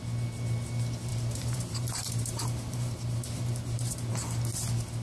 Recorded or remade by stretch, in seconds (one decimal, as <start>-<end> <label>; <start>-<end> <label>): 0.0-1.1 recorded; 1.1-4.1 remade; 4.1-5.0 recorded